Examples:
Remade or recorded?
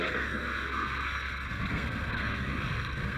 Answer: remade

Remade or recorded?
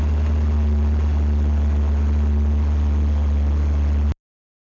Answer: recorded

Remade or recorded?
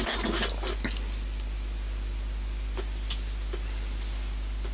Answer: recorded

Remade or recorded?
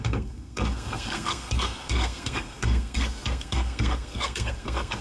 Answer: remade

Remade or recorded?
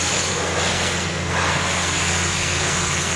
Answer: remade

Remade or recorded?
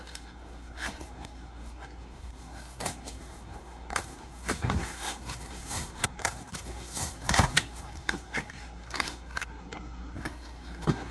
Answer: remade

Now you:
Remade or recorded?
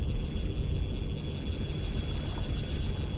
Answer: recorded